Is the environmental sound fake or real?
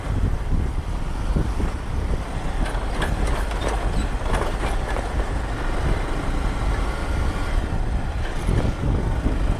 real